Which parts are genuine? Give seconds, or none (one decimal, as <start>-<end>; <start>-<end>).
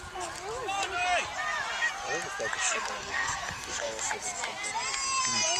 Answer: 0.0-2.6; 4.0-5.6